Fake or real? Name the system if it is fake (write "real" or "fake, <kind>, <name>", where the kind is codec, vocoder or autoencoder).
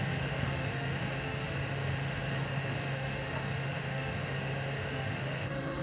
fake, autoencoder, DAC-VAE